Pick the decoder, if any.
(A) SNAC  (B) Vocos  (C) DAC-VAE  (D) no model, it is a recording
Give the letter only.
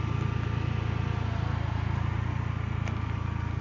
D